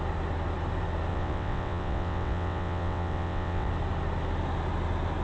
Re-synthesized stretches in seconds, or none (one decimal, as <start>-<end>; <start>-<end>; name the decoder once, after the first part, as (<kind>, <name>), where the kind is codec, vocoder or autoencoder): 1.1-3.7 (vocoder, WaveNeXt)